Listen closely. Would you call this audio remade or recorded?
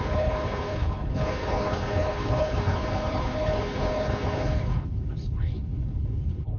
remade